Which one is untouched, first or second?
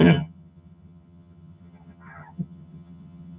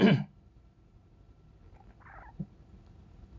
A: second